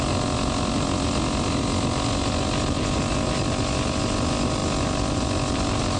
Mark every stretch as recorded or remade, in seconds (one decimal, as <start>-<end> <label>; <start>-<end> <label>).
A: 0.0-6.0 recorded